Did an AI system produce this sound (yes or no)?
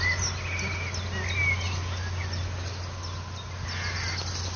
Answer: no